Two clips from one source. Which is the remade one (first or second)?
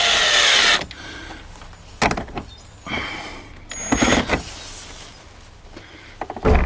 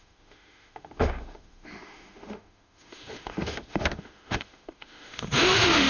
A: second